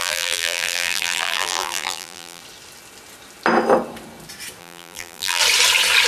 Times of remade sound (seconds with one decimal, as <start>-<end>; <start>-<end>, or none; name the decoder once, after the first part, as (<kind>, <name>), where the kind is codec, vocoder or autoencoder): 0.0-2.4 (vocoder, BigVGAN v2); 4.6-5.4